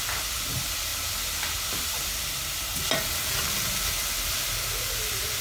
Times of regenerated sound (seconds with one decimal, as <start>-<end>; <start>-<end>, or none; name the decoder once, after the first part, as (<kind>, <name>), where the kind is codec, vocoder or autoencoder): none